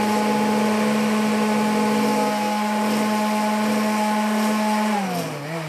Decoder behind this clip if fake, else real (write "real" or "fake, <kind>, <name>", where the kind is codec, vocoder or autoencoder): real